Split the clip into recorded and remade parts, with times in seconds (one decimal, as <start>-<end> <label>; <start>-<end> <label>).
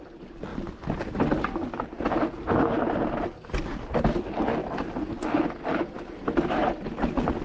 0.0-7.4 recorded